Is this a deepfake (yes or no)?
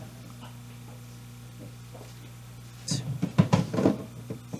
no